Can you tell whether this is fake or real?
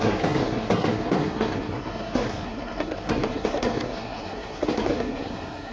fake